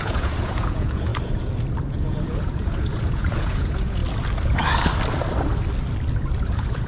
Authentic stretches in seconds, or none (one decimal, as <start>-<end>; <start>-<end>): 1.1-1.8; 4.0-6.4